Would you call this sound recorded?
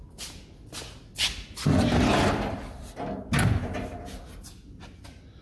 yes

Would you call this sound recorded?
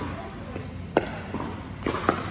yes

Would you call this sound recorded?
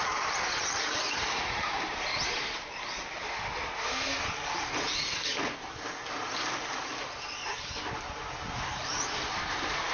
yes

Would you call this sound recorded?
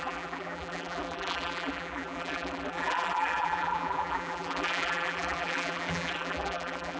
no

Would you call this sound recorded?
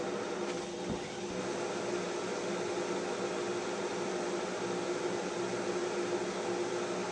yes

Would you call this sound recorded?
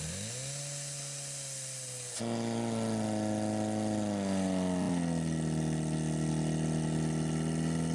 yes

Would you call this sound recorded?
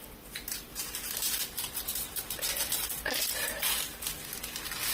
yes